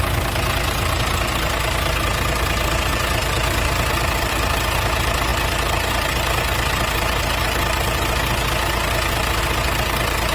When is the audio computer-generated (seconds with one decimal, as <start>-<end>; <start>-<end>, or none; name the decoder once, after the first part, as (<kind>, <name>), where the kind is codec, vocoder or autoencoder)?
none